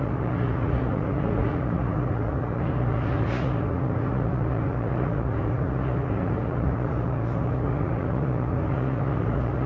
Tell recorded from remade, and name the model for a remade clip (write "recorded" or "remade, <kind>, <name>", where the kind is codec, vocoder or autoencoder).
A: remade, vocoder, Vocos